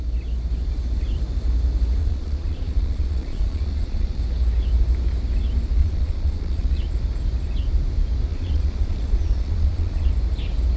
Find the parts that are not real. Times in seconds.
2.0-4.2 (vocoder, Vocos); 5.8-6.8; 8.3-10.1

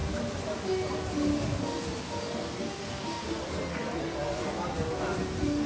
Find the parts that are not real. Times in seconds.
none

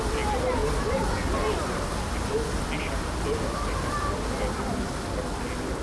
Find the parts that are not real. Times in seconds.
none

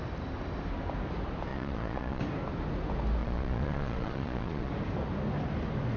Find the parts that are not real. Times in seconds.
1.5-2.2 (vocoder, Vocos); 3.2-4.7